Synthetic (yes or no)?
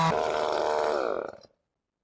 no